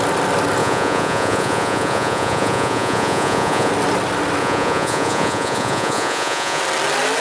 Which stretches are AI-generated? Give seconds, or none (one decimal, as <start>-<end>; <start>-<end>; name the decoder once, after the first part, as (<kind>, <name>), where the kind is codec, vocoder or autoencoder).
0.6-3.7 (vocoder, Vocos); 4.4-6.6